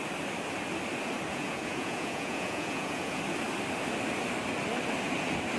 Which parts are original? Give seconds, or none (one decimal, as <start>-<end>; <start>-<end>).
0.0-1.3; 3.2-5.6